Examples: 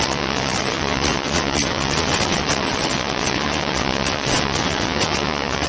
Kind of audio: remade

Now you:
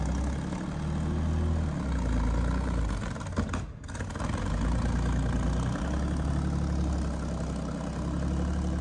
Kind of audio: recorded